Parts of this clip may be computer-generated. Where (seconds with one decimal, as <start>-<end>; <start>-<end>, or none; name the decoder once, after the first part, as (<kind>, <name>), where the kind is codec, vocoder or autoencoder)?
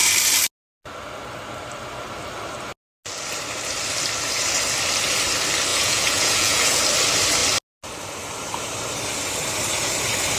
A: 5.7-6.8 (vocoder, Vocos)